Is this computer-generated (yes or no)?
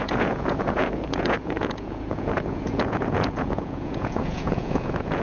yes